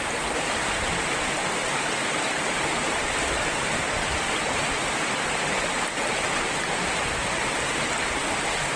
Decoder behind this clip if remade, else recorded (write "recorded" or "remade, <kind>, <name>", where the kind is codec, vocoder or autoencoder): recorded